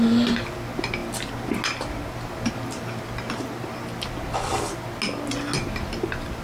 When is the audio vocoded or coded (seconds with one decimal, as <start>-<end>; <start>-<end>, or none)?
none